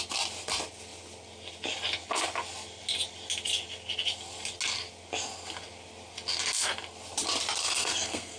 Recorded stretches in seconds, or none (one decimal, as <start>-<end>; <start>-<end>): 0.0-7.6